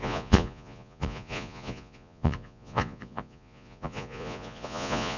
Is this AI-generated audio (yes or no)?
yes